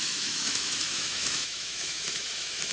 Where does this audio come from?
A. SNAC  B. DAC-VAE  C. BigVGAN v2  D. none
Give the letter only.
B